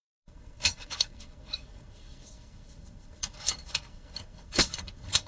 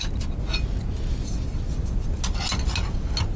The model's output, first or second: first